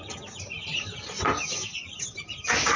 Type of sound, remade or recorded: recorded